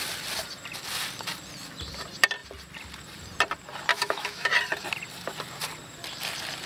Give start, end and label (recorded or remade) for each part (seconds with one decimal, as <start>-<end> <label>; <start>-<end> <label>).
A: 0.0-3.9 recorded; 3.9-4.5 remade; 4.5-6.7 recorded